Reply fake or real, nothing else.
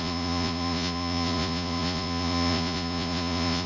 fake